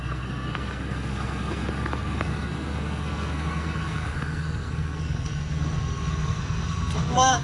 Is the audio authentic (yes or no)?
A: no